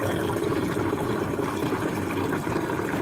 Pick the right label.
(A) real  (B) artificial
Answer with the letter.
B